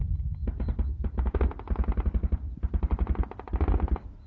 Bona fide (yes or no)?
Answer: yes